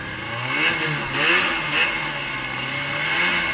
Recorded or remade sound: recorded